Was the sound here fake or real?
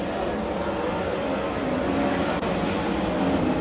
real